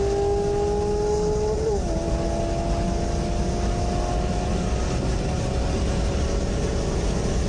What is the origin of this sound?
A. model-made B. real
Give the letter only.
B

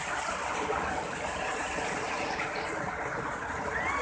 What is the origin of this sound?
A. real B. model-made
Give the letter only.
A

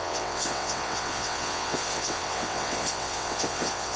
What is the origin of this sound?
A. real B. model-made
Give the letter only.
B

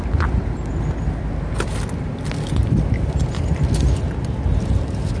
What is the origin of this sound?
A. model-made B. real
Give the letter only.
B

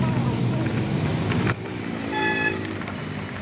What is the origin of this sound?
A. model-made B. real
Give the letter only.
B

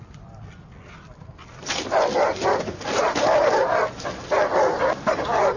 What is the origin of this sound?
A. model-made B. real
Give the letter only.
B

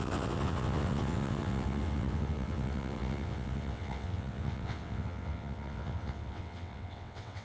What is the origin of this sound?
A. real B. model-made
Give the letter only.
B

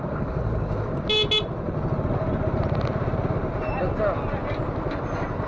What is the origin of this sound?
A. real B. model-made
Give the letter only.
A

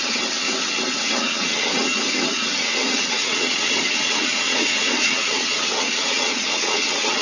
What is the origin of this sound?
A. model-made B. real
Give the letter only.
A